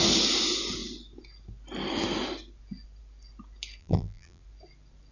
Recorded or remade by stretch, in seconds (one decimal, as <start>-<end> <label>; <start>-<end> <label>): 0.0-3.8 recorded; 3.8-4.4 remade; 4.4-5.1 recorded